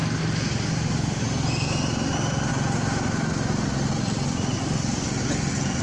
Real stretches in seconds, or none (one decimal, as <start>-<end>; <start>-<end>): 1.2-5.8